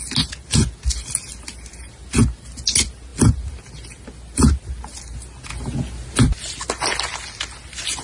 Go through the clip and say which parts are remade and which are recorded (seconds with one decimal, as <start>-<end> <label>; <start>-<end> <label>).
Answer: 0.0-8.0 recorded